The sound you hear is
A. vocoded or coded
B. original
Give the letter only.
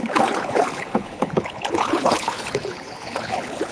A